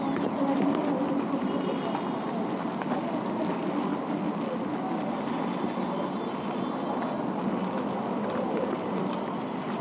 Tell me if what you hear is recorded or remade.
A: recorded